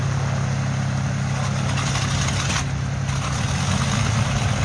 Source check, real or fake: real